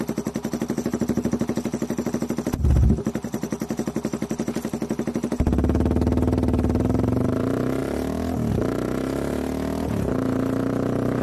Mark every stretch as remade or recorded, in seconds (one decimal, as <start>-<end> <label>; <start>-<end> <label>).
0.0-11.2 recorded